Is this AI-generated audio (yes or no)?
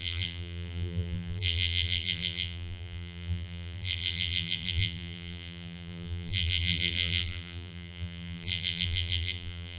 yes